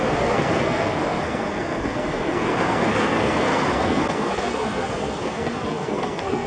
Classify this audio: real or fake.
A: fake